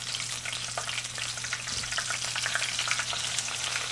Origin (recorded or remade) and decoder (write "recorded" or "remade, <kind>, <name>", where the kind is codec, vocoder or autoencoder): recorded